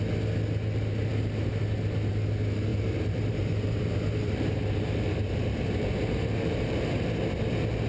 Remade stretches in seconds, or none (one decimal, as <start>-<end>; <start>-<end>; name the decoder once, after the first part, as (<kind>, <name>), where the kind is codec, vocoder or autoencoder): 2.7-7.4 (vocoder, BigVGAN v2)